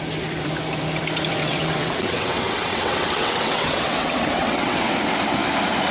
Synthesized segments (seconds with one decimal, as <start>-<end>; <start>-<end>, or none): 1.4-4.9